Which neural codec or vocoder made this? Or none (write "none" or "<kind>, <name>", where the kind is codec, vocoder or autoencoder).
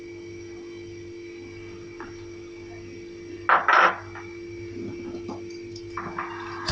none